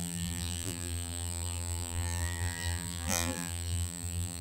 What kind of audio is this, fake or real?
fake